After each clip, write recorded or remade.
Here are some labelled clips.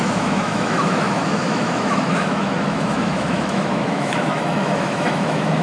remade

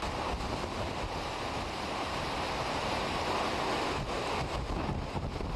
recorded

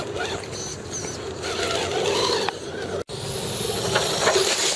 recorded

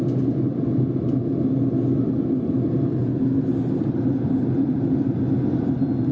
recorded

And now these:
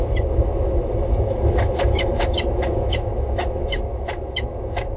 remade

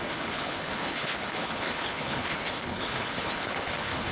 remade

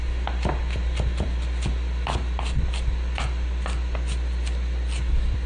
recorded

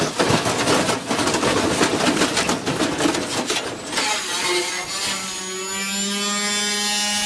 recorded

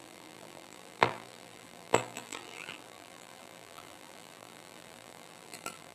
remade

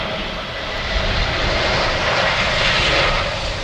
recorded